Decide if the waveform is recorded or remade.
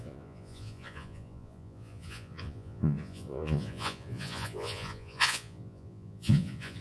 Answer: remade